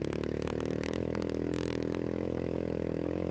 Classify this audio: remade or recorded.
remade